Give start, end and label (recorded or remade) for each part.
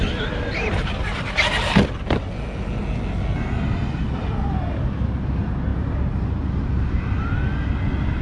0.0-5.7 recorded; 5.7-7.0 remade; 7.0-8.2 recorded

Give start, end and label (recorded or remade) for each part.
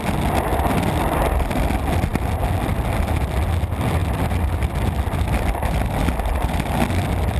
0.0-0.5 recorded; 0.5-1.6 remade; 1.6-4.0 recorded; 4.0-7.0 remade; 7.0-7.4 recorded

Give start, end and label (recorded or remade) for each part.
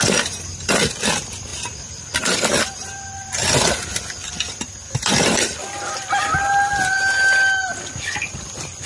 0.0-8.9 recorded